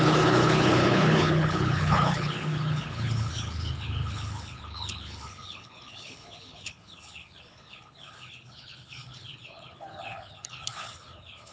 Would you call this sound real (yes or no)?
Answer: no